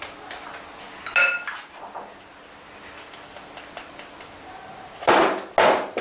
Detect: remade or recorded recorded